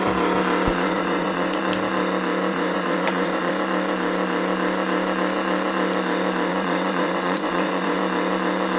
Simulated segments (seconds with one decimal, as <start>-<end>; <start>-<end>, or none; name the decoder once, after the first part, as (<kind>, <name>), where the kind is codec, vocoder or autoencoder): 0.7-1.6 (vocoder, Vocos); 2.5-3.5; 6.5-8.0